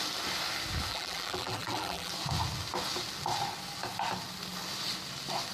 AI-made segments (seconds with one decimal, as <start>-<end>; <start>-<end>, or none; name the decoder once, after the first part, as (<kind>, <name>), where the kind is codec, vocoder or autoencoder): 0.9-2.1 (vocoder, BigVGAN v2)

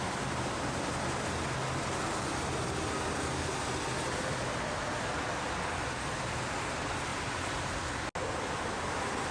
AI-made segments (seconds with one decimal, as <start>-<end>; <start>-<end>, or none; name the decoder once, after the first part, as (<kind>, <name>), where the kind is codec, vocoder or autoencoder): none

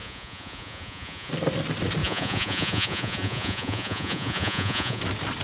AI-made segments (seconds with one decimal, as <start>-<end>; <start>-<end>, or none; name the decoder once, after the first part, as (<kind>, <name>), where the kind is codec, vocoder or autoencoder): 0.0-1.3 (vocoder, Vocos); 2.0-5.0

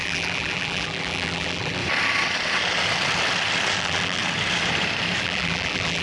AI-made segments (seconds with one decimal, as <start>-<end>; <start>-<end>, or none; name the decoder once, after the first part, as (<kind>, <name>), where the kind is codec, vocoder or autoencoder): 0.0-1.8 (vocoder, BigVGAN v2); 3.8-4.2; 5.2-6.0

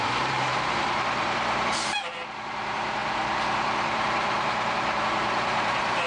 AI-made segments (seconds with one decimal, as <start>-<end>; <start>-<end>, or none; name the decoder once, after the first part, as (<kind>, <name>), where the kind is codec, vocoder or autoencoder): 0.0-6.1 (vocoder, BigVGAN v2)

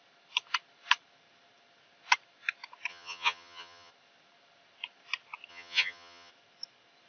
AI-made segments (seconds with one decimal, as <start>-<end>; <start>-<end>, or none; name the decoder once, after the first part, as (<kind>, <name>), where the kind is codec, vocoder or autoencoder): 2.9-3.9 (vocoder, HiFi-GAN); 5.5-6.3

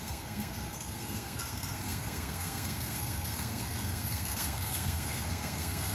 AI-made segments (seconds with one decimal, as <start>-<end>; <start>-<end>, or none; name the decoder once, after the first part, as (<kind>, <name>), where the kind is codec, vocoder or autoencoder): 0.0-5.9 (codec, SNAC)